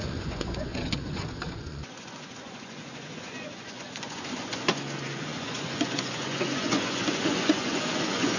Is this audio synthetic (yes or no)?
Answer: yes